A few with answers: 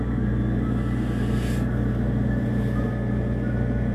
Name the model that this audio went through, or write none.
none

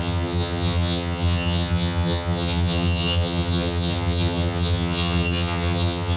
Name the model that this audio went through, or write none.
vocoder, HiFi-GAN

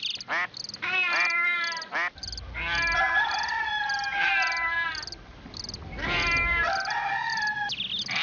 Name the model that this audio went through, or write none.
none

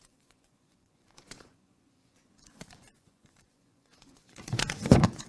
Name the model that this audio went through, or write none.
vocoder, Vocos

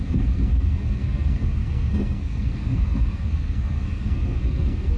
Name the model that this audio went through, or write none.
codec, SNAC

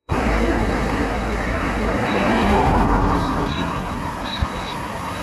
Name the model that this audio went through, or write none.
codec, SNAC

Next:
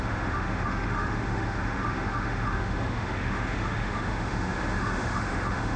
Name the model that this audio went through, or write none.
autoencoder, DAC-VAE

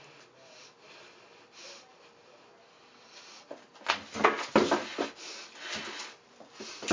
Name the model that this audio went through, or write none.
none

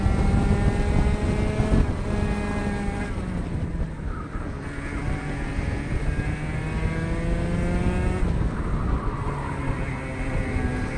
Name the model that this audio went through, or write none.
none